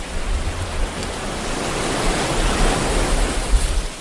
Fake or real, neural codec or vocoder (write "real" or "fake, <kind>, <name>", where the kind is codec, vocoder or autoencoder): real